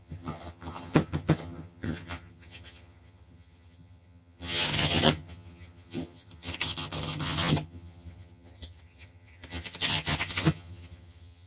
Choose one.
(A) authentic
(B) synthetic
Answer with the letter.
B